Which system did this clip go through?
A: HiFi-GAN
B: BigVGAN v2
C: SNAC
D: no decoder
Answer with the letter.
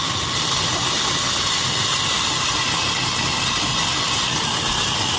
D